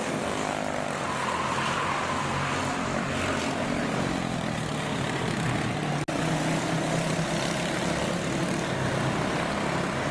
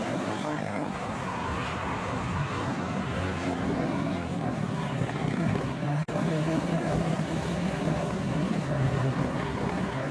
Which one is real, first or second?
first